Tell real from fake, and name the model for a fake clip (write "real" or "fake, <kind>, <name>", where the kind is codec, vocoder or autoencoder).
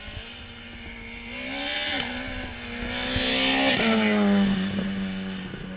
real